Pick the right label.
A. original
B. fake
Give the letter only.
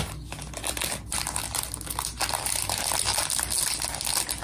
A